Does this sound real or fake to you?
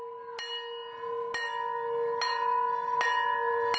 real